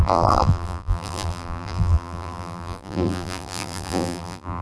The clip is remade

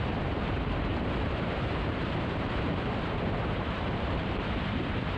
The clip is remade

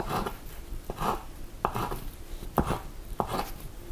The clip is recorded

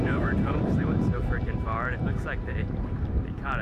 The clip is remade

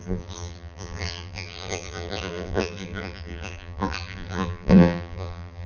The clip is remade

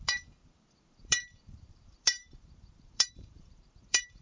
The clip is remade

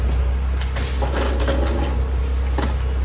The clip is recorded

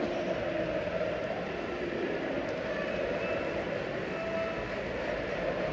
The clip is recorded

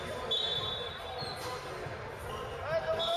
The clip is recorded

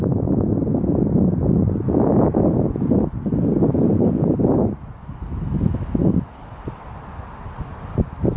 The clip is recorded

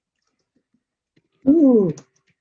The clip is recorded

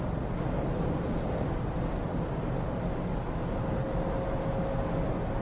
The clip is recorded